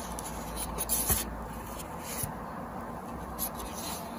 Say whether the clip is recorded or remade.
recorded